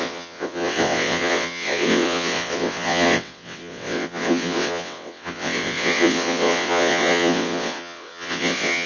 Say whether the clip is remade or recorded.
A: remade